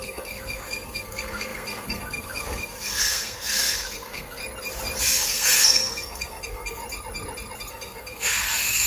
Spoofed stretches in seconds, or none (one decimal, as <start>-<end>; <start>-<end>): 0.0-4.4; 5.0-6.8; 7.7-8.9